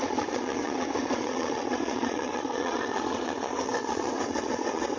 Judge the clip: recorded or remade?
remade